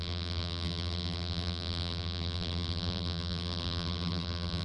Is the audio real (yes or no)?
no